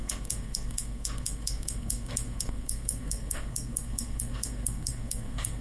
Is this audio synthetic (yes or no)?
yes